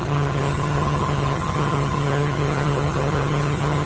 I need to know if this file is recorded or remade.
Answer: remade